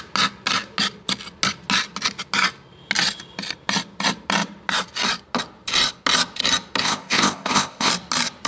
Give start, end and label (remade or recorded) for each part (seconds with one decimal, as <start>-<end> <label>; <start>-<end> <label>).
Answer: 0.0-6.8 recorded; 6.8-7.9 remade; 7.9-8.5 recorded